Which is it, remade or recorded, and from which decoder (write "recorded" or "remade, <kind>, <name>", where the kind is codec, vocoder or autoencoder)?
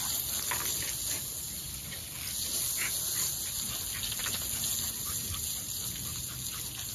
recorded